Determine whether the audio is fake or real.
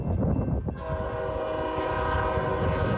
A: real